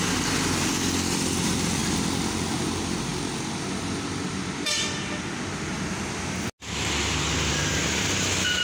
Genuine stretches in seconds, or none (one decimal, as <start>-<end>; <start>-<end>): 0.0-8.6